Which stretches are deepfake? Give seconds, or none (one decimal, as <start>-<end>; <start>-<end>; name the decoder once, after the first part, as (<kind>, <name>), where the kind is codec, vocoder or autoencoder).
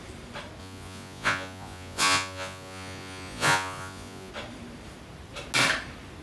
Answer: 0.6-4.3 (vocoder, Vocos)